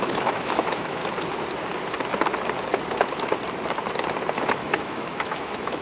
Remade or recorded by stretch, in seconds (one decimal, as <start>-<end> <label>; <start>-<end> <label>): 0.0-1.0 remade; 1.0-4.5 recorded; 4.5-5.8 remade